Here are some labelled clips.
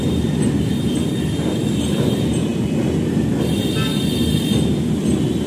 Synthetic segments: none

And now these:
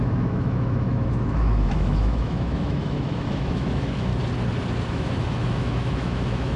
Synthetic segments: 0.0-4.1 (autoencoder, DAC-VAE); 4.9-6.6

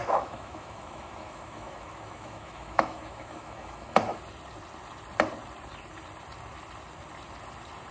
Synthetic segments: 0.0-4.2 (autoencoder, DAC-VAE)

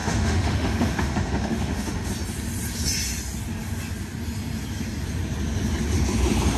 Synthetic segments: 0.0-2.1 (autoencoder, DAC-VAE)

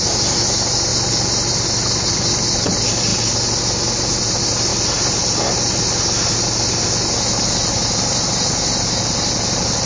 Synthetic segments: none

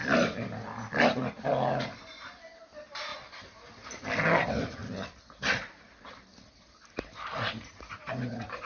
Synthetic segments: none